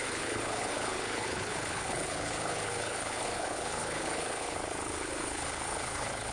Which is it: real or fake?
fake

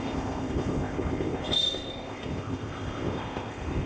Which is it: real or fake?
fake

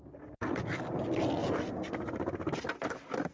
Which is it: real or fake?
real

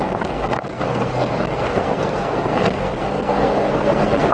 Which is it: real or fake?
fake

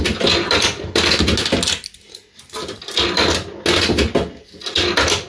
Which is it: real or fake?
real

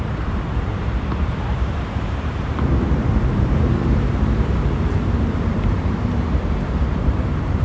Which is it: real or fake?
fake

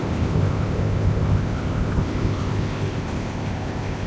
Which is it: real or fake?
fake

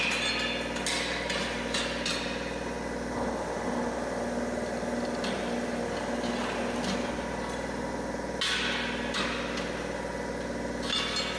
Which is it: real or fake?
real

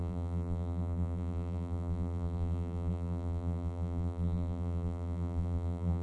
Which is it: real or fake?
fake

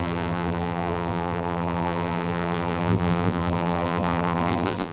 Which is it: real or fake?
fake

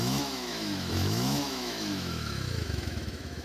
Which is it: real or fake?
fake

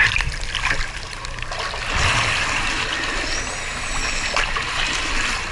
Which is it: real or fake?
real